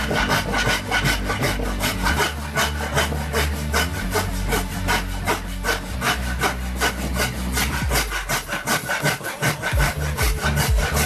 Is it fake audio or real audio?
real